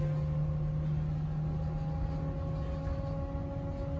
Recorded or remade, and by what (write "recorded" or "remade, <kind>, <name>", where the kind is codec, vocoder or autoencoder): recorded